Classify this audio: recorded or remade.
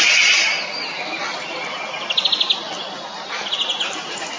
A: recorded